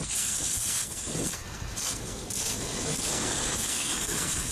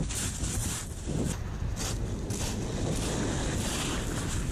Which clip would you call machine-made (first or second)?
first